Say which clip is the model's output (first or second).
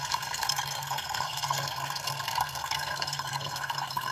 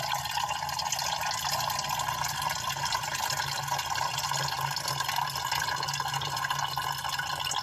first